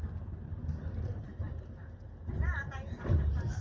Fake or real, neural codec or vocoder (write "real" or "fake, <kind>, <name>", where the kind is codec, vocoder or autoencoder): real